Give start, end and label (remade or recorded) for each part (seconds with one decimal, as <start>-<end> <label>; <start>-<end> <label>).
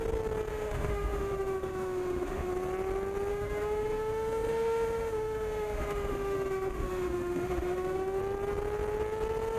0.0-0.5 recorded; 0.5-2.5 remade; 2.5-3.3 recorded; 3.3-8.2 remade; 8.2-9.6 recorded